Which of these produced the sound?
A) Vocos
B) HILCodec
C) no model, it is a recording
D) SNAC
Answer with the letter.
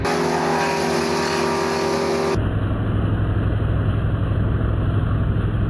C